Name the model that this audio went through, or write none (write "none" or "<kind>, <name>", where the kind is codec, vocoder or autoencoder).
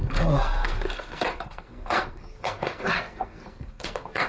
codec, SNAC